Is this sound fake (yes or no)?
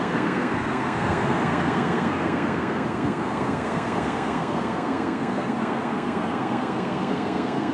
yes